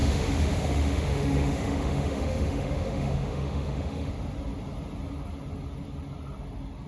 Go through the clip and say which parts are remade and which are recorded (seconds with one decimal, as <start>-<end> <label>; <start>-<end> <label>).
0.0-4.1 remade; 4.1-6.9 recorded